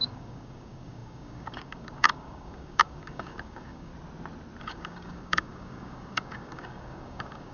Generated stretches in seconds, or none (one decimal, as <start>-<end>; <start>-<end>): 0.0-3.9; 4.6-7.5